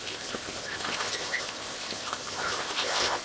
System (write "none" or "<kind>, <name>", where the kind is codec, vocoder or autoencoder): codec, ZipCodec